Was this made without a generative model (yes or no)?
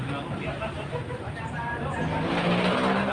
yes